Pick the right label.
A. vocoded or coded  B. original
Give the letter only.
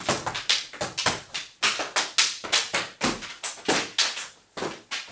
B